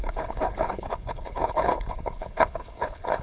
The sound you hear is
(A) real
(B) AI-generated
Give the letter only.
B